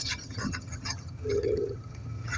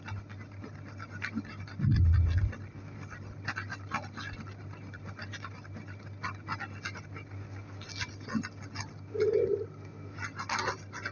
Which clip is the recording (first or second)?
second